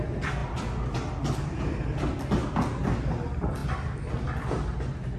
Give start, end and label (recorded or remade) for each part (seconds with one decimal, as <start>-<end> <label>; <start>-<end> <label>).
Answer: 0.0-5.2 recorded

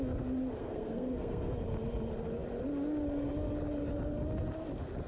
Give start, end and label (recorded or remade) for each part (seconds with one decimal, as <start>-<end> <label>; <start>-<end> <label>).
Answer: 0.0-0.6 recorded; 0.6-1.5 remade; 1.5-5.1 recorded

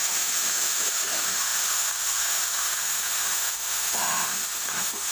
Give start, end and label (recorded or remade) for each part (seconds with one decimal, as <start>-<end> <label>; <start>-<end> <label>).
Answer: 0.0-5.1 remade

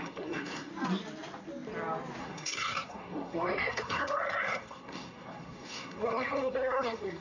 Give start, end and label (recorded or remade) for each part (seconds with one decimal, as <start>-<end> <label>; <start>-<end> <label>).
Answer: 0.0-0.7 remade; 0.7-2.2 recorded; 2.2-7.2 remade